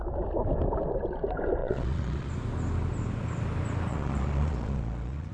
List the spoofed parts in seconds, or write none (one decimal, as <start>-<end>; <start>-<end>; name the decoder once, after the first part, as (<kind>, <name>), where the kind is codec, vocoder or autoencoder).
1.6-2.3 (vocoder, Vocos); 3.9-5.3

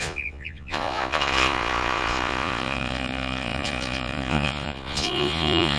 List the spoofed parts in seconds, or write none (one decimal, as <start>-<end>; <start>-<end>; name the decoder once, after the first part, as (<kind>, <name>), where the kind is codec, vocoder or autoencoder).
0.0-5.8 (vocoder, Vocos)